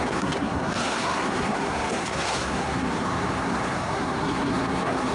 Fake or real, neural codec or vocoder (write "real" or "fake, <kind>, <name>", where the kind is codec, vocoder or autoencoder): fake, codec, SNAC